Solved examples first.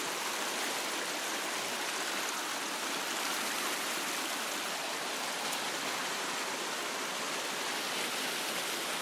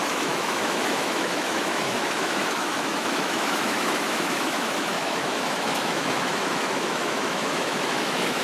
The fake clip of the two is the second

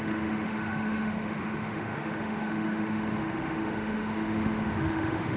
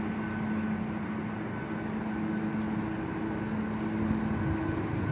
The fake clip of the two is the first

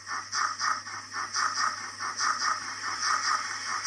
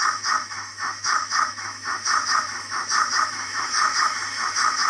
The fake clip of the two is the second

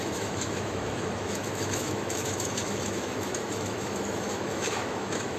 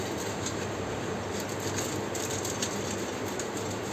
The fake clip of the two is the first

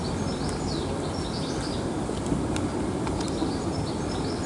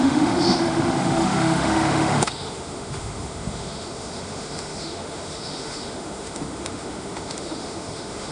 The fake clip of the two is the second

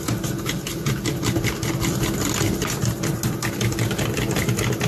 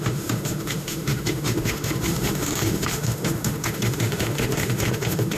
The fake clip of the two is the second